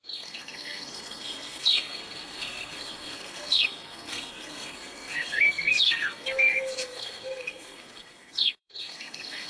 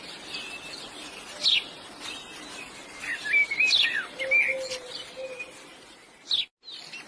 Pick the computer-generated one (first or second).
first